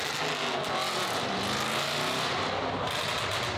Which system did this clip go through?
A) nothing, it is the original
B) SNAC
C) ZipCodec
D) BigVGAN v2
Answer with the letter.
A